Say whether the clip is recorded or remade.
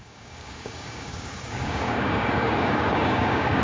remade